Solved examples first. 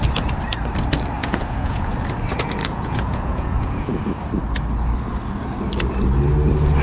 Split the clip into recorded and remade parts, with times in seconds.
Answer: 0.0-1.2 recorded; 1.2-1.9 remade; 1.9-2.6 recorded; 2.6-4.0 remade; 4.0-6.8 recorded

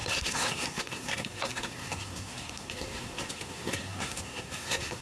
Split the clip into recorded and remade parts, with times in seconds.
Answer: 0.0-5.0 remade

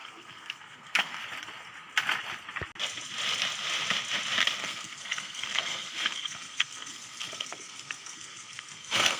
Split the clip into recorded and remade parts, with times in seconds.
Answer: 0.0-1.2 remade; 1.2-4.6 recorded; 4.6-9.2 remade

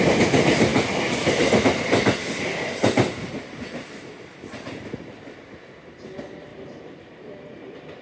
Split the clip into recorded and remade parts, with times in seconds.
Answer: 0.0-6.5 recorded; 6.5-7.3 remade; 7.3-8.0 recorded